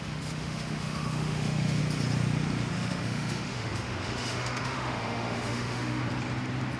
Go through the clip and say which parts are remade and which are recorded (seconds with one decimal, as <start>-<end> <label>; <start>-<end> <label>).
0.0-1.8 remade; 1.8-2.7 recorded; 2.7-6.0 remade; 6.0-6.8 recorded